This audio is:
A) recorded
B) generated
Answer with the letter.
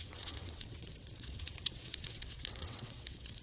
B